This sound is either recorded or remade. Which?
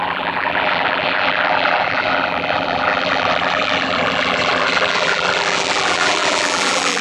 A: remade